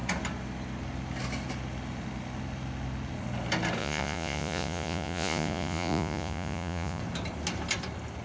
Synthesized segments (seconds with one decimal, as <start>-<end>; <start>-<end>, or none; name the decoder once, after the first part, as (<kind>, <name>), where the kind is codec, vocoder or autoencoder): 3.8-7.0 (vocoder, Vocos)